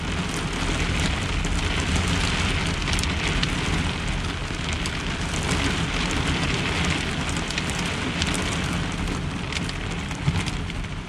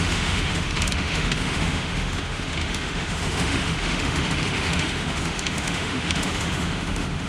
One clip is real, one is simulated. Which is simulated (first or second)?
second